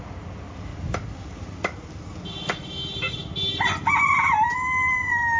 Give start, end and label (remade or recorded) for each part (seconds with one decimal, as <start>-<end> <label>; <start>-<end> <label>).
0.0-5.4 recorded